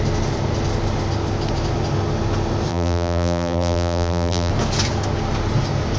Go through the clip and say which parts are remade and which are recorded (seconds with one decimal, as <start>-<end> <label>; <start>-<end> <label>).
0.0-2.7 recorded; 2.7-4.5 remade; 4.5-6.0 recorded